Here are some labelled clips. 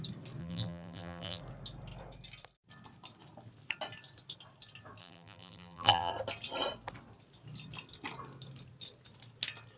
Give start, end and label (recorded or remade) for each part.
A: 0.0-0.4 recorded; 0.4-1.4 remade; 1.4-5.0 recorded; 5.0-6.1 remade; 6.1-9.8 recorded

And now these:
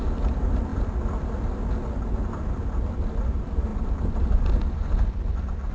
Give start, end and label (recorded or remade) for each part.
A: 0.0-5.7 recorded